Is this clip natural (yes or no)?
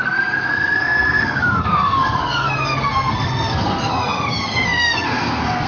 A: no